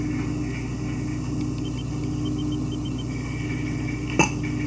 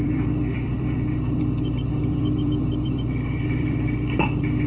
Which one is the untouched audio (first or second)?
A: first